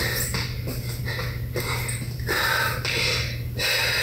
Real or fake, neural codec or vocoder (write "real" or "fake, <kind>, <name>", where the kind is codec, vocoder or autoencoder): real